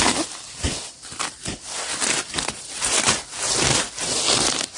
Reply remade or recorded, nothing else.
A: remade